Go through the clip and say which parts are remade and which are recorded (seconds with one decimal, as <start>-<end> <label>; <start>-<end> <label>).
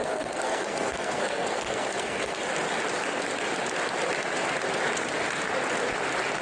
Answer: 0.0-2.4 remade; 2.4-6.4 recorded